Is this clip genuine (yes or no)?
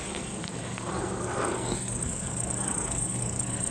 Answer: no